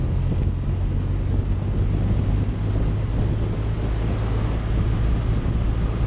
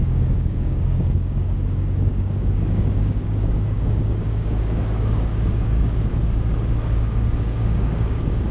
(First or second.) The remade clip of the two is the second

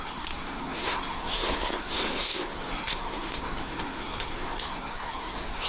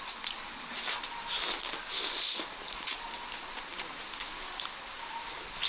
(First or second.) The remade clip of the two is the first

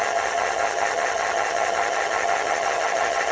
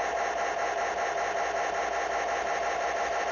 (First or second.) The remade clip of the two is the first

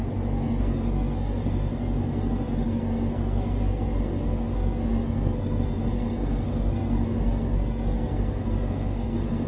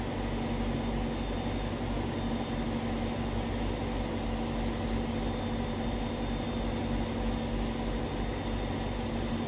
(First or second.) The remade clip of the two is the first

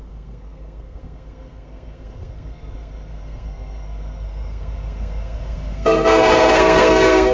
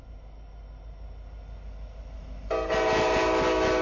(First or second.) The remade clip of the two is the first